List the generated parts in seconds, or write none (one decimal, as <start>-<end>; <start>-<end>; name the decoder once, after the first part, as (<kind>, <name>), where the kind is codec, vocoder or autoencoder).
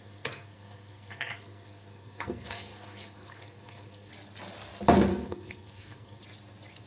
0.0-4.1 (codec, SNAC); 5.1-6.2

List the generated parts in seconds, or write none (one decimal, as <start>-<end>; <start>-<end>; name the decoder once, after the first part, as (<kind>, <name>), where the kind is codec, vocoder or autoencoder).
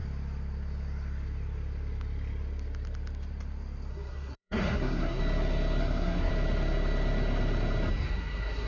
3.9-5.2 (codec, SNAC); 5.8-6.3; 8.1-8.7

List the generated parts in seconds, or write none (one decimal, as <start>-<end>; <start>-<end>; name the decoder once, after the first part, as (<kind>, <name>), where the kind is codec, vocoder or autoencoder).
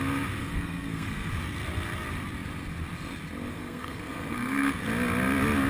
0.4-1.3 (codec, SNAC); 3.5-4.8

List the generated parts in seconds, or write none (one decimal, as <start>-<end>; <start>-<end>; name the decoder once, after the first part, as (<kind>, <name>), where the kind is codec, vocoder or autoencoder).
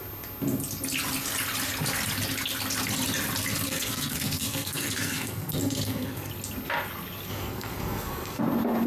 3.7-6.3 (codec, SNAC); 7.3-8.4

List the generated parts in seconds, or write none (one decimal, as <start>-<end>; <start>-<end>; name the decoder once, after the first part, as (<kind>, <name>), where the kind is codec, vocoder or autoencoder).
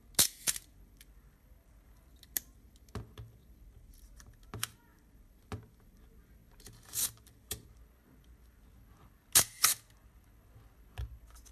none